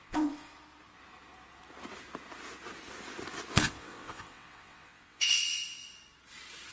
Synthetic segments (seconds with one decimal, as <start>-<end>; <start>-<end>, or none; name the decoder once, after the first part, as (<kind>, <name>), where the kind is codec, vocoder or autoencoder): 0.0-0.5 (vocoder, WaveNeXt); 3.5-5.8